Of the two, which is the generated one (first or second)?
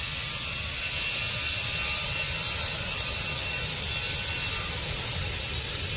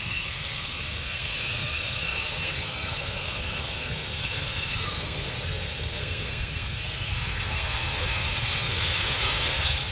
second